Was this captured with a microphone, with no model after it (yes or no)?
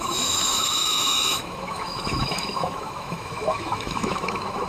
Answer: no